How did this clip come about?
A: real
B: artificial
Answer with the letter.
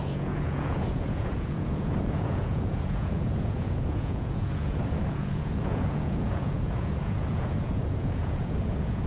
B